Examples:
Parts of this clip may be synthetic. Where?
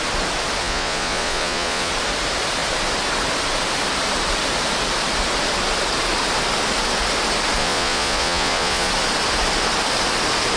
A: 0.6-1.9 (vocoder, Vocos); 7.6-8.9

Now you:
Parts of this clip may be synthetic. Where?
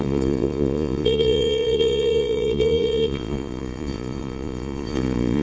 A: 0.0-5.4 (vocoder, Vocos)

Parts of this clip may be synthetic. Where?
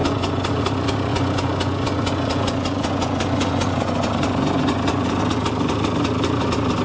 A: 0.0-0.6 (vocoder, Vocos); 1.1-5.2